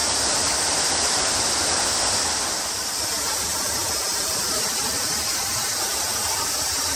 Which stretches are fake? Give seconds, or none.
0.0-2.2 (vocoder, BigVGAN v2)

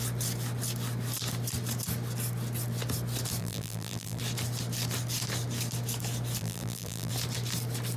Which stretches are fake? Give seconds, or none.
3.4-4.2 (vocoder, BigVGAN v2); 6.4-7.1